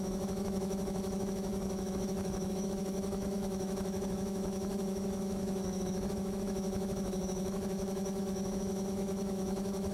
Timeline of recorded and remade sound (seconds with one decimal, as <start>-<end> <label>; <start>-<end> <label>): 0.0-9.9 remade

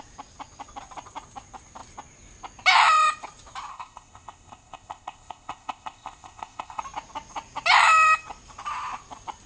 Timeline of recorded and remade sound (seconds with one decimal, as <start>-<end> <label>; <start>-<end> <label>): 0.0-3.7 recorded; 3.7-6.8 remade; 6.8-9.5 recorded

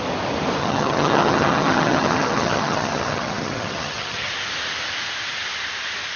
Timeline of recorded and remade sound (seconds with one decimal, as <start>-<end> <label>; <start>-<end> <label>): 0.0-0.6 recorded; 0.6-4.3 remade; 4.3-6.2 recorded